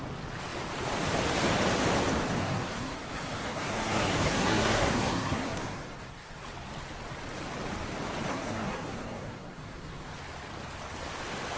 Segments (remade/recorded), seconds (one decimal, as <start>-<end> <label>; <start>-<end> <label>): 0.0-2.4 recorded; 2.4-6.4 remade; 6.4-8.3 recorded; 8.3-10.1 remade; 10.1-11.6 recorded